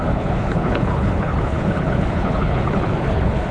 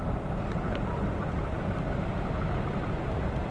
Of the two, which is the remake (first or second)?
first